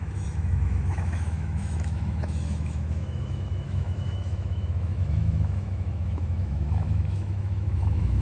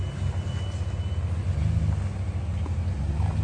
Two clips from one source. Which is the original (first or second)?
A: second